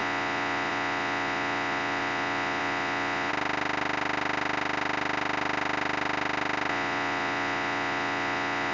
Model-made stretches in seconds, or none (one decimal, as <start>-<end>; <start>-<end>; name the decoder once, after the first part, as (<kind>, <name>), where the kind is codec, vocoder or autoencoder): 0.0-3.3 (vocoder, Vocos); 6.7-8.7